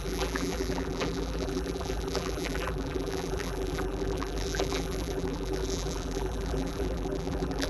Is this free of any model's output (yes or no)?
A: no